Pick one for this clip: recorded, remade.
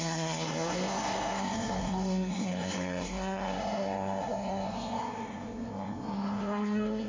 remade